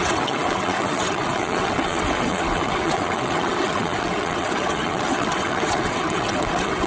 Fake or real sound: fake